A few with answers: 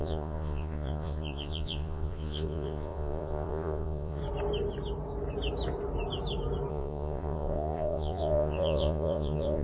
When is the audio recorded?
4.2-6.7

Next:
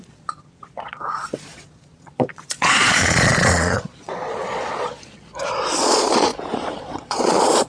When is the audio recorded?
5.3-5.8; 6.3-6.8